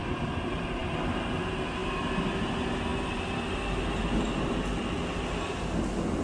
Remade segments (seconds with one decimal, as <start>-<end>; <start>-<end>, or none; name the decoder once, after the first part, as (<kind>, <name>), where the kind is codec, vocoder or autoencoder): none